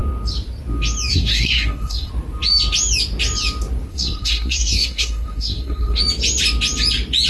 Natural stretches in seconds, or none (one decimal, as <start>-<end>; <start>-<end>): 0.0-1.1; 2.1-3.9; 6.0-7.3